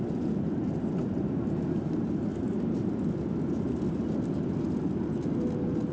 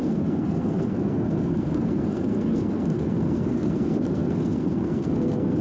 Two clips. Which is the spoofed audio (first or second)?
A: second